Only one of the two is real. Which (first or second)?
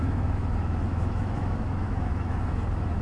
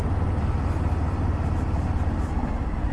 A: second